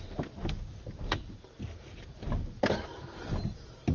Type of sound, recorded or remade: recorded